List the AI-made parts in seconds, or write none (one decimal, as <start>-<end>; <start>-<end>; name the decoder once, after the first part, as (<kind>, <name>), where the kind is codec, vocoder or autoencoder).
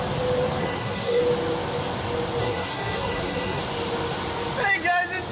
0.6-1.2 (codec, SNAC); 2.4-3.6